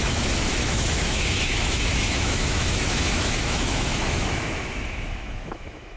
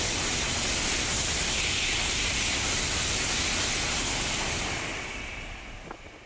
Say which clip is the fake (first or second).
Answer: first